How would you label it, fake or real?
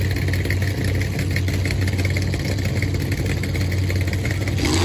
real